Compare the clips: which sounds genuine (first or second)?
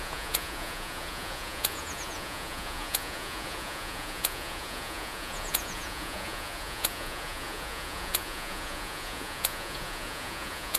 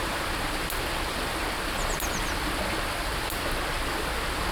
second